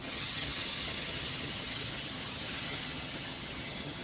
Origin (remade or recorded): remade